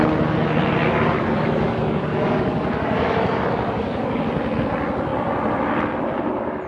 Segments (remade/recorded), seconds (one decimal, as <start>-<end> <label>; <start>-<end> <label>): 0.0-0.8 recorded; 0.8-4.2 remade; 4.2-6.7 recorded